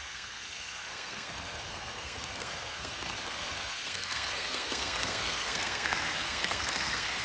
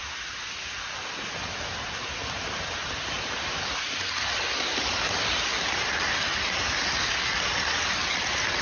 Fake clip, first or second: first